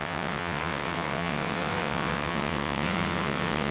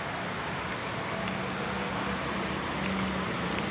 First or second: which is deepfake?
first